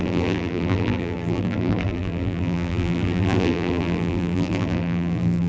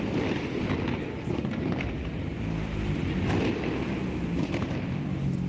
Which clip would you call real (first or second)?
second